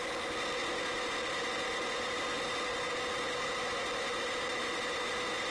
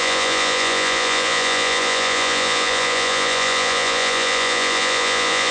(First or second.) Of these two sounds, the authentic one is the first